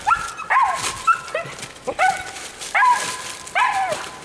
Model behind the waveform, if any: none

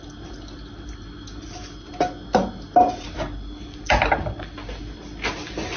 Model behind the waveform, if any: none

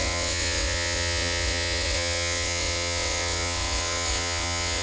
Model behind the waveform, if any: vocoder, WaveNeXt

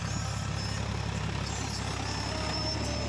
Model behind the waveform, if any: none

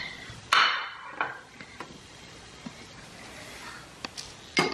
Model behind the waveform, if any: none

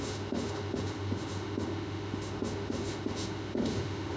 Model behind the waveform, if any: autoencoder, DAC-VAE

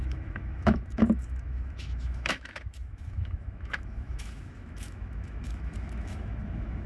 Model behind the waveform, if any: autoencoder, DAC-VAE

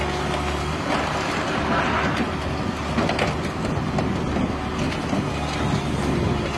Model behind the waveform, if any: none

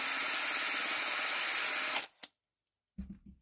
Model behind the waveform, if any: none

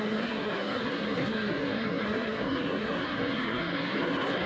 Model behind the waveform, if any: codec, SNAC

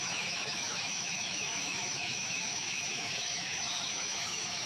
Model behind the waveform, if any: autoencoder, DAC-VAE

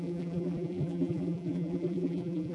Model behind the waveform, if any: vocoder, BigVGAN v2